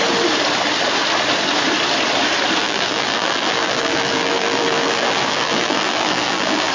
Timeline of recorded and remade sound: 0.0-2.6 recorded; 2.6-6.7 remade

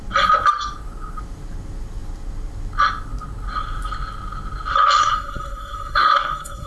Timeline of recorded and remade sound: 0.0-5.0 recorded; 5.0-6.7 remade

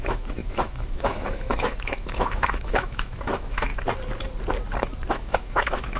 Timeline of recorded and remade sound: 0.0-3.7 remade; 3.7-5.1 recorded; 5.1-6.0 remade

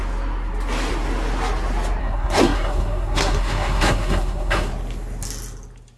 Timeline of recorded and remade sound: 0.0-2.0 recorded; 2.0-4.7 remade; 4.7-6.0 recorded

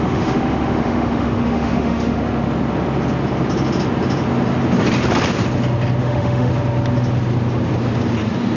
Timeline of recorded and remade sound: 0.0-2.2 remade; 2.2-6.0 recorded; 6.0-6.5 remade; 6.5-8.6 recorded

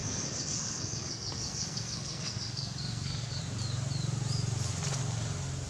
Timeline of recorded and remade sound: 0.0-3.4 remade; 3.4-5.7 recorded

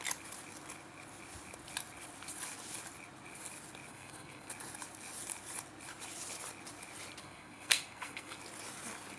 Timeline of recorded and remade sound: 0.0-3.9 recorded; 3.9-4.5 remade; 4.5-7.2 recorded; 7.2-8.4 remade; 8.4-9.2 recorded

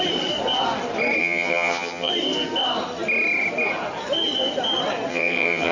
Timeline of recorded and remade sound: 0.0-1.2 recorded; 1.2-2.1 remade; 2.1-5.1 recorded; 5.1-5.7 remade